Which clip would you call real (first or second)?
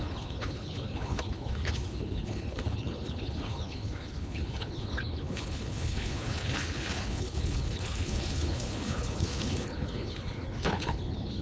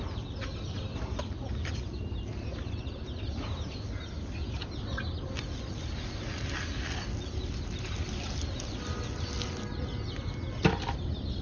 second